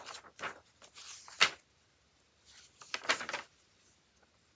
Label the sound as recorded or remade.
recorded